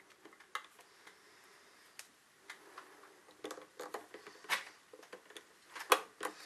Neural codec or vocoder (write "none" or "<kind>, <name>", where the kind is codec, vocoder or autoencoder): none